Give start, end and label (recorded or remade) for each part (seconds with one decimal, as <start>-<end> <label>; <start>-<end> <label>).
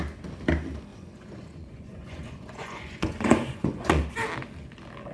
0.0-0.9 recorded; 0.9-4.0 remade; 4.0-5.1 recorded